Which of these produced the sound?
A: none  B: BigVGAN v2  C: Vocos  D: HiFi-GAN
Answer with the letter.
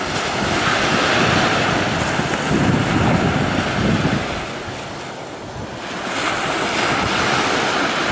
A